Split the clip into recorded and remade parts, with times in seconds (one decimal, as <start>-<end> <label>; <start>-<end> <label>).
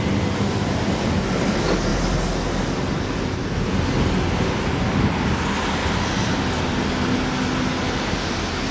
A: 0.0-8.7 recorded